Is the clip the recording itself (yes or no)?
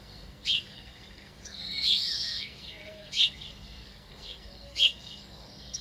no